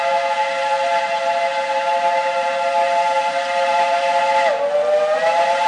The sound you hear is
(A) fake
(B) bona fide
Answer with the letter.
B